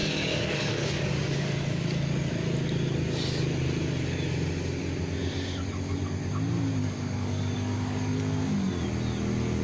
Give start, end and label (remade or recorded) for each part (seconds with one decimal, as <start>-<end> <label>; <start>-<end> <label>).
0.0-2.3 remade; 2.3-6.8 recorded; 6.8-8.2 remade; 8.2-9.6 recorded